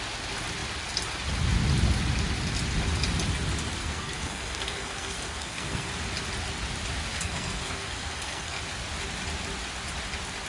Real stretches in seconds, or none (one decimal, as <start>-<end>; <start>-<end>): 0.0-3.8; 5.9-7.1; 8.6-10.5